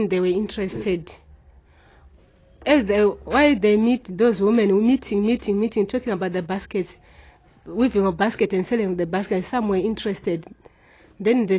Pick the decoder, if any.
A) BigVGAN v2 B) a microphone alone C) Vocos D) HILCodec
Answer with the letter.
B